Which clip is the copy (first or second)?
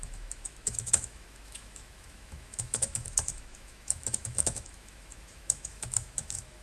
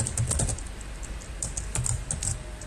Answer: first